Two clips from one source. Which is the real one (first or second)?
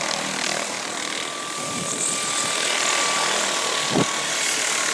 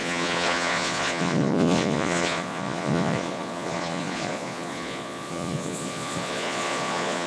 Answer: first